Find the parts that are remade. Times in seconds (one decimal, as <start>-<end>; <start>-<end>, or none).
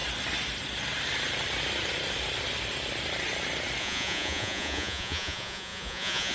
3.8-6.3